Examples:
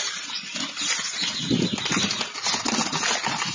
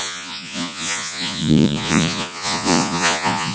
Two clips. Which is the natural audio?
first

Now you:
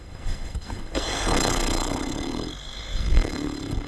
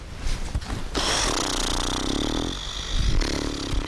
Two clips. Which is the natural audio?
second